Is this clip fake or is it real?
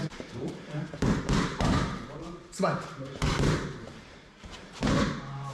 fake